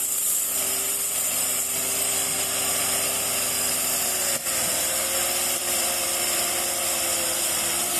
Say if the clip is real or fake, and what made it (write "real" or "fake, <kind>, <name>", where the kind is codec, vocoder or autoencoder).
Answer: fake, vocoder, BigVGAN v2